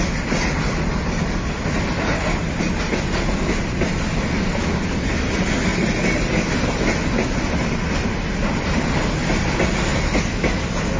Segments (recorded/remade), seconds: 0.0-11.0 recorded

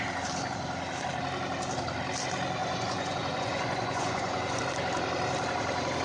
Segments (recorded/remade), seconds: 0.0-2.6 recorded; 2.6-4.6 remade; 4.6-6.0 recorded

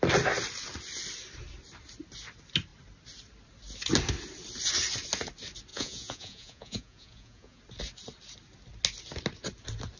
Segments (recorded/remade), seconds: 0.0-5.7 recorded; 5.7-7.6 remade; 7.6-10.0 recorded

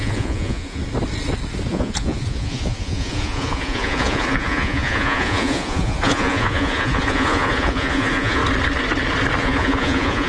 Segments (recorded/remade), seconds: 0.0-0.8 remade; 0.8-1.7 recorded; 1.7-8.4 remade; 8.4-9.4 recorded; 9.4-10.3 remade

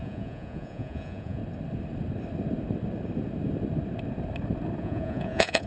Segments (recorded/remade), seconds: 0.0-1.4 remade; 1.4-4.8 recorded; 4.8-5.7 remade

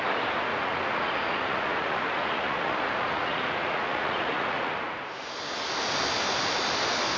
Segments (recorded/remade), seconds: 0.0-0.5 recorded; 0.5-4.8 remade; 4.8-7.2 recorded

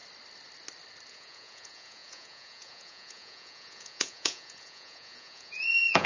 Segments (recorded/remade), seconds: 0.0-1.1 recorded; 1.1-6.1 remade

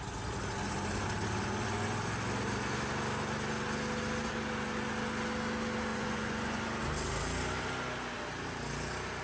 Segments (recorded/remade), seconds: 0.0-5.9 recorded; 5.9-6.6 remade; 6.6-9.2 recorded